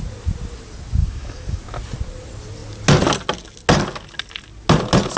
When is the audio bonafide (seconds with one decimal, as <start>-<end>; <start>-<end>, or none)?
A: 0.0-1.0; 1.6-5.2